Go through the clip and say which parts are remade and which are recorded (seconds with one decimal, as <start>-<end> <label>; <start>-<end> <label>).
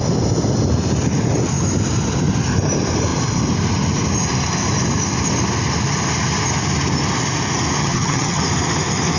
0.0-7.8 recorded; 7.8-8.4 remade; 8.4-9.2 recorded